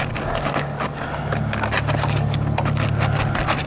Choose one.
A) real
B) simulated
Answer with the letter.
A